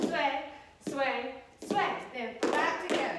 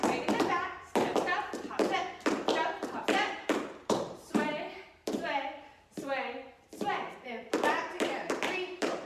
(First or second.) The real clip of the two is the first